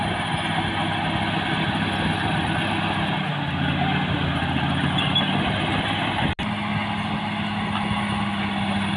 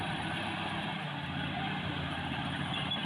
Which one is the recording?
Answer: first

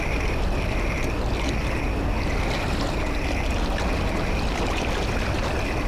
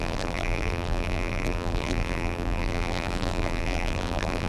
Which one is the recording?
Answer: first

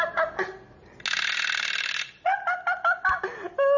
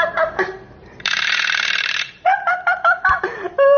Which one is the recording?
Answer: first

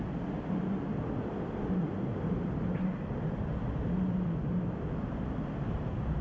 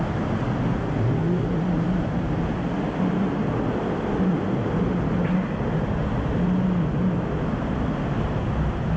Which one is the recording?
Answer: second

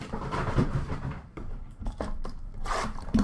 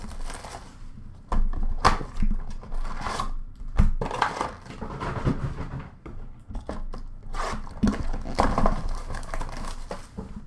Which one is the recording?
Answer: second